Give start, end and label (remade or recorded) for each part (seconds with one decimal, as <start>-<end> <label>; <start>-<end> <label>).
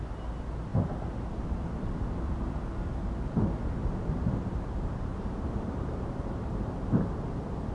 0.0-5.1 recorded; 5.1-6.3 remade; 6.3-7.7 recorded